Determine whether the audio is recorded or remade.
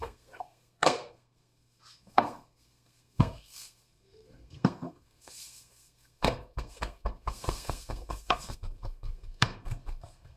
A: remade